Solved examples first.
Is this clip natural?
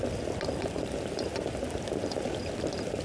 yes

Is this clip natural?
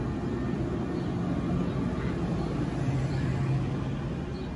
yes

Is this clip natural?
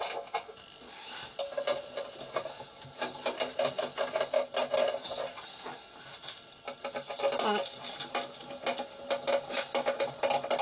yes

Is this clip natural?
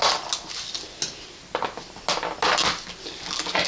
yes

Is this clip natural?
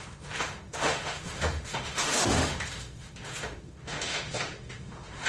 no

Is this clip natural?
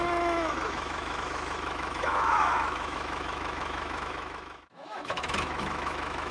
no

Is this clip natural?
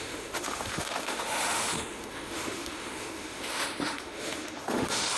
no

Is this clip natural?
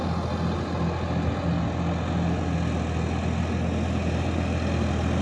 yes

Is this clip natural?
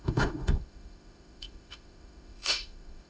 no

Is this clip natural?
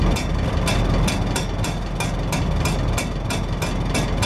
yes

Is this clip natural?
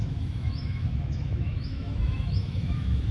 no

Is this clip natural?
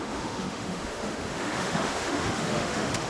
no